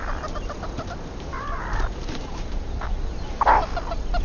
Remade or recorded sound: recorded